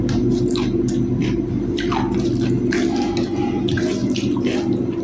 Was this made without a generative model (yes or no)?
yes